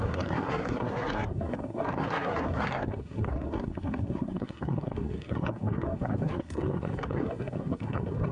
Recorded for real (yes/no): no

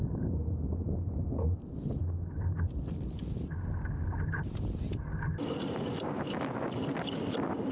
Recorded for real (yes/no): yes